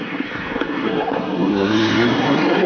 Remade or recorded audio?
remade